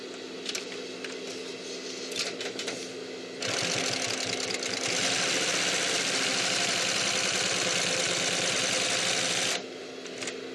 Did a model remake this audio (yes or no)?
no